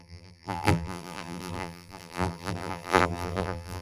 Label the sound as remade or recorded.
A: remade